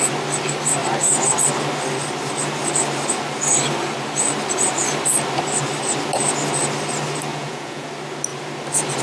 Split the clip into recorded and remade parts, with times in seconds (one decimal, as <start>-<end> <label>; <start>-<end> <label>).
0.0-7.3 recorded; 7.3-7.9 remade; 7.9-9.0 recorded